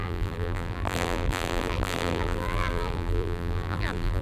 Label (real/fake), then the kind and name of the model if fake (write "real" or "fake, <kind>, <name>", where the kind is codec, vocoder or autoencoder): fake, vocoder, BigVGAN v2